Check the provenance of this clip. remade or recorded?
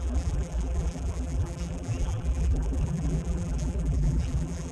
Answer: remade